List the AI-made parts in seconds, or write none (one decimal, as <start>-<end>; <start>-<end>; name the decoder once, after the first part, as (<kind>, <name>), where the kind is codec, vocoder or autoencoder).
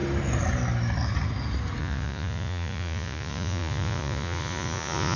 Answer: 1.8-5.2 (vocoder, Vocos)